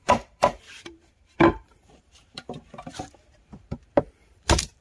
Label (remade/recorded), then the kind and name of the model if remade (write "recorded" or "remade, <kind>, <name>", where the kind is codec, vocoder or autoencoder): remade, vocoder, BigVGAN v2